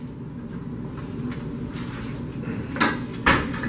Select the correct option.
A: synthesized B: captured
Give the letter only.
B